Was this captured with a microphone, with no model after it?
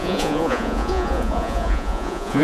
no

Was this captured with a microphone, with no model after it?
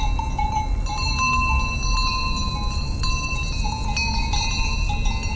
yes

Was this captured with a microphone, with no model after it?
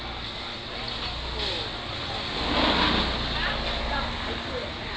yes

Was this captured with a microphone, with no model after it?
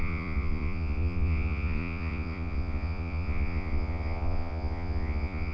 no